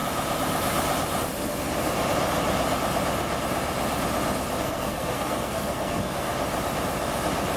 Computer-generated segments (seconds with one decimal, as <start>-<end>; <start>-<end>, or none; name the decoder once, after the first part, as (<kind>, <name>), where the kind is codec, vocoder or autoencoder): 4.6-6.3 (codec, SNAC)